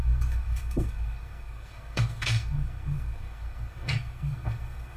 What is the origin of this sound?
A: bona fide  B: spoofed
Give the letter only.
B